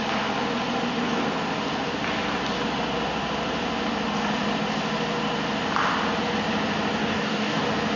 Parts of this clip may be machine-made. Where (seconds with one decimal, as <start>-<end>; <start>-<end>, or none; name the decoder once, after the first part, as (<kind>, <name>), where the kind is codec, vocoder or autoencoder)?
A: 7.0-7.6 (codec, DAC)